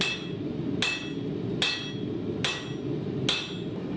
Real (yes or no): yes